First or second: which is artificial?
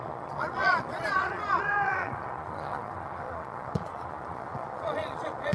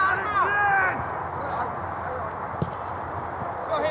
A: first